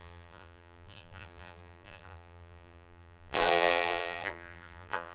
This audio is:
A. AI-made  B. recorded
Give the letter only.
A